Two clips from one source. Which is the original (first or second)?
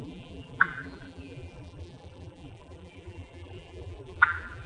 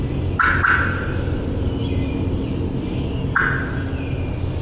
second